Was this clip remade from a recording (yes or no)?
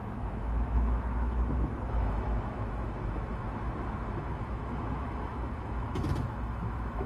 yes